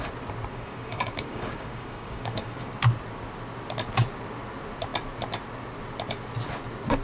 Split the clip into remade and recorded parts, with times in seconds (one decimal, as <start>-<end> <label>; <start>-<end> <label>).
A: 0.0-0.5 recorded; 0.5-2.7 remade; 2.7-7.0 recorded

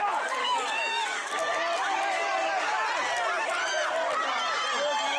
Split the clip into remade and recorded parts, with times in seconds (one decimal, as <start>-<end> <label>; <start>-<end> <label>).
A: 0.0-0.4 recorded; 0.4-1.3 remade; 1.3-1.8 recorded; 1.8-2.8 remade; 2.8-5.2 recorded

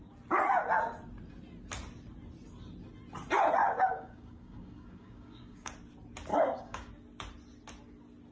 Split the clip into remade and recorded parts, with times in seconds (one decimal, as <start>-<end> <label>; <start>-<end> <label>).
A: 0.0-3.6 recorded; 3.6-5.7 remade; 5.7-6.3 recorded; 6.3-6.9 remade; 6.9-8.3 recorded

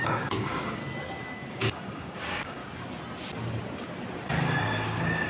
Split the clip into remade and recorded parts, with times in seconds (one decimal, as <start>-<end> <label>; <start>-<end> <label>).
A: 0.0-0.8 remade; 0.8-1.5 recorded; 1.5-2.6 remade; 2.6-4.4 recorded; 4.4-5.3 remade

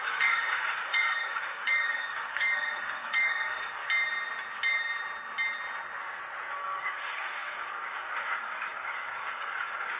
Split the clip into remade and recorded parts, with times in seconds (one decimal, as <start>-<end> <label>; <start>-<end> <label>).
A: 0.0-3.8 remade; 3.8-6.5 recorded; 6.5-10.0 remade

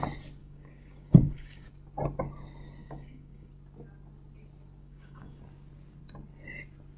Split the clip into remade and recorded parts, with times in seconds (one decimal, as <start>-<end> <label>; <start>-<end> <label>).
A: 0.0-0.4 recorded; 0.4-1.7 remade; 1.7-2.8 recorded; 2.8-3.5 remade; 3.5-4.8 recorded; 4.8-5.4 remade; 5.4-7.0 recorded

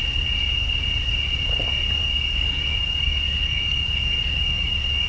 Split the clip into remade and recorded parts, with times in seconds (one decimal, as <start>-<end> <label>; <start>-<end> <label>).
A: 0.0-2.0 recorded; 2.0-5.1 remade

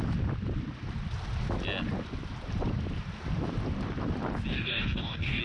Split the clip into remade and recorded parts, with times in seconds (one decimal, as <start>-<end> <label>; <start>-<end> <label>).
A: 0.0-4.5 recorded; 4.5-5.4 remade